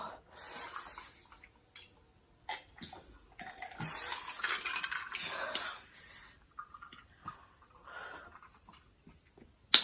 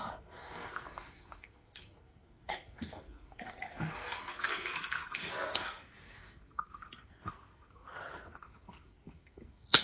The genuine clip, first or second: first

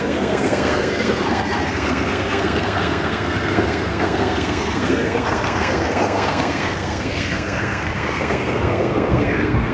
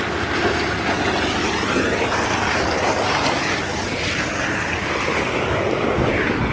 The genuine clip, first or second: second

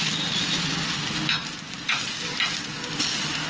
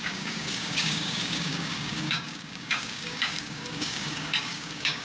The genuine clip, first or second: first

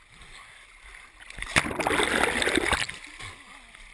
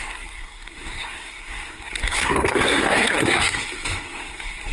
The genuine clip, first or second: first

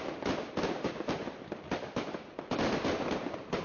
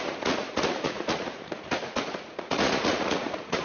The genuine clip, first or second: first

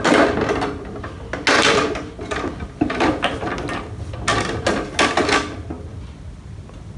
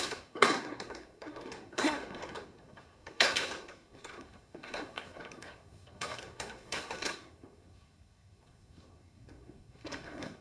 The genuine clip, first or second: first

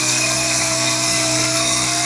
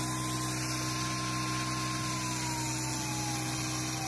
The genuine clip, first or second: second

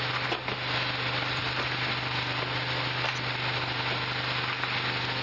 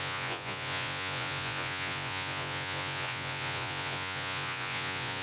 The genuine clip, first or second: first